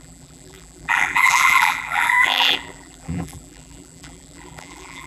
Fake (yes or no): yes